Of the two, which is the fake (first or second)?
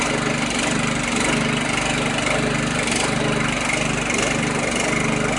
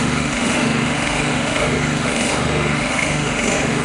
second